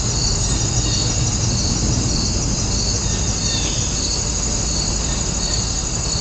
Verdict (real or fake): real